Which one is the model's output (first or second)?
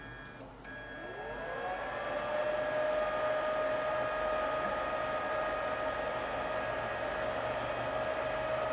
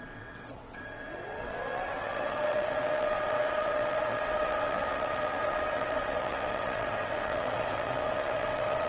second